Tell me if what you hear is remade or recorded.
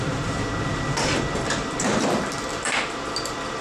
remade